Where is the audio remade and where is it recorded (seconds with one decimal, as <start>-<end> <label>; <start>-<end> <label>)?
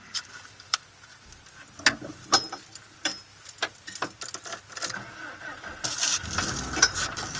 0.0-1.1 remade; 1.1-2.6 recorded; 2.6-3.1 remade; 3.1-6.7 recorded; 6.7-7.4 remade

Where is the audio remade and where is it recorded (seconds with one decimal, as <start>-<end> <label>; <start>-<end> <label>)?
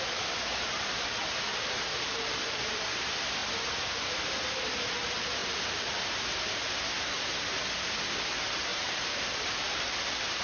0.0-1.5 recorded; 1.5-2.8 remade; 2.8-5.4 recorded; 5.4-6.0 remade; 6.0-8.7 recorded; 8.7-10.4 remade